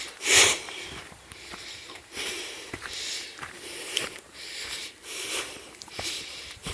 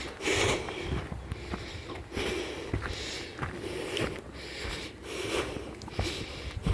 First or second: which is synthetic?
first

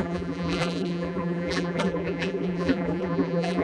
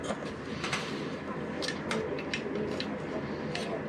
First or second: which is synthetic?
first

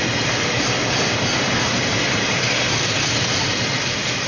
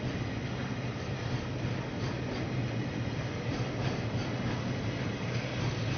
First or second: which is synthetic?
first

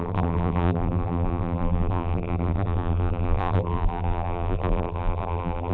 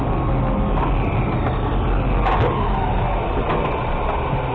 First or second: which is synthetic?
first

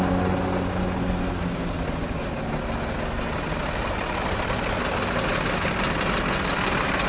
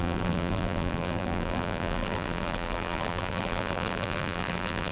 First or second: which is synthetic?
second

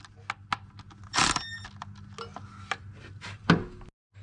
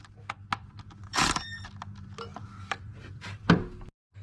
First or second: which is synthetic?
second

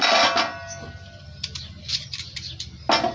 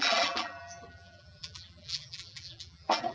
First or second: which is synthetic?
second